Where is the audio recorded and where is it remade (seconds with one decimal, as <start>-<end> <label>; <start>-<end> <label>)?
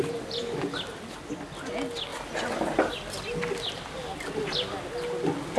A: 0.0-5.6 recorded